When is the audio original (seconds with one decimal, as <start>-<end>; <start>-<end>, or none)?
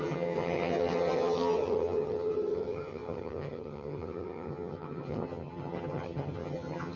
none